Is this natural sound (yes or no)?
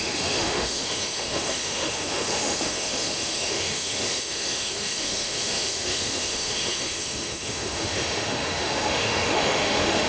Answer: no